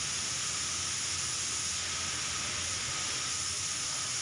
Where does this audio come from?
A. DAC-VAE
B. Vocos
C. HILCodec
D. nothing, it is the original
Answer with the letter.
D